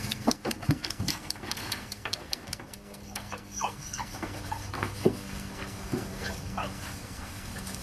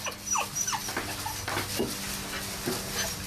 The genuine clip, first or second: second